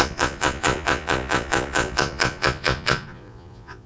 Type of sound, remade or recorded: remade